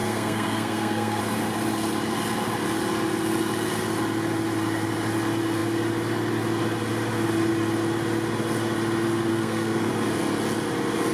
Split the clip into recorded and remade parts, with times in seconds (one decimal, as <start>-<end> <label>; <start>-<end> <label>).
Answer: 0.0-1.2 remade; 1.2-9.3 recorded; 9.3-9.9 remade; 9.9-11.1 recorded